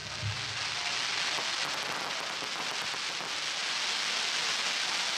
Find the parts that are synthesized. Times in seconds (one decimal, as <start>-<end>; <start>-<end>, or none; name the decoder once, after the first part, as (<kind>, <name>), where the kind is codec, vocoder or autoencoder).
none